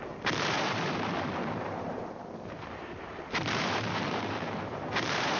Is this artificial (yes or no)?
yes